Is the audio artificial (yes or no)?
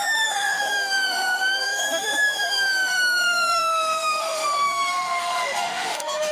yes